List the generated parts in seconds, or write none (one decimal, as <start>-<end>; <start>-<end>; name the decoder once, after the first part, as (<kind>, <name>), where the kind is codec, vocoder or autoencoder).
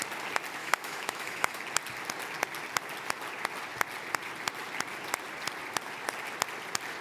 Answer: 0.6-1.6 (autoencoder, DAC-VAE)